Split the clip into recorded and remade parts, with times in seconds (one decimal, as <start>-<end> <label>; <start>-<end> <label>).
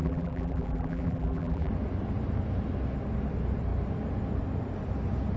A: 0.0-1.7 remade; 1.7-5.4 recorded